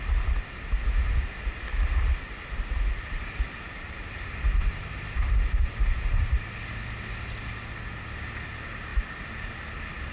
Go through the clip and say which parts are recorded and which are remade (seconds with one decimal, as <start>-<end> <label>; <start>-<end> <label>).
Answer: 0.0-10.1 recorded